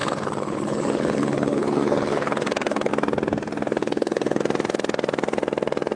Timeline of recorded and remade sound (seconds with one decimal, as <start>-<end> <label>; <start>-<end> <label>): 0.0-2.9 remade; 2.9-3.8 recorded; 3.8-4.4 remade; 4.4-6.0 recorded